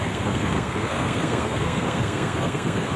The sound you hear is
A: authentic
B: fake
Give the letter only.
B